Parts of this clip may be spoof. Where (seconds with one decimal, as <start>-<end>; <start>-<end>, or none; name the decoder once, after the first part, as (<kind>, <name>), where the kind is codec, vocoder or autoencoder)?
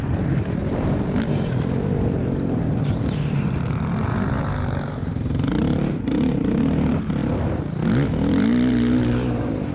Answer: 0.0-7.2 (vocoder, BigVGAN v2); 8.7-9.7